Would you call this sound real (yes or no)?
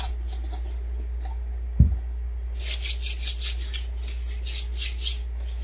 yes